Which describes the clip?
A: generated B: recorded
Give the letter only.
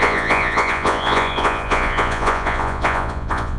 A